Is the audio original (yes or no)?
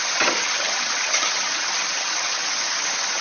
no